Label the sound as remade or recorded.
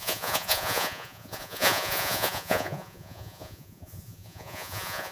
remade